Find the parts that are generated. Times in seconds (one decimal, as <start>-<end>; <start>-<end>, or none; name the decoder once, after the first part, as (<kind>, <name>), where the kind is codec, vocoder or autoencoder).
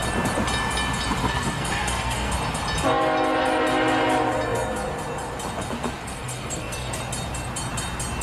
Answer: 1.2-2.3 (codec, SNAC); 6.0-7.0